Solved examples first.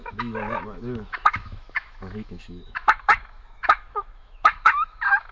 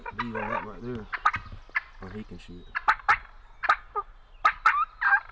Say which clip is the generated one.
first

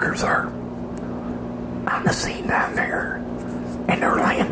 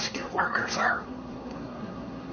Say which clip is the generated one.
second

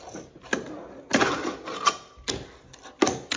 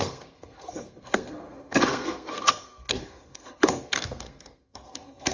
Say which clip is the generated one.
second